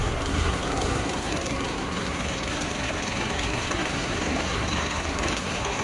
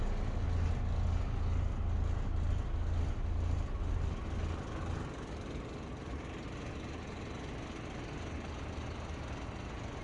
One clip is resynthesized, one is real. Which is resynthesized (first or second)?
first